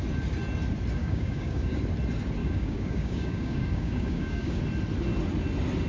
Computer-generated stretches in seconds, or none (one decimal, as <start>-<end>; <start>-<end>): 1.0-1.8; 2.4-4.6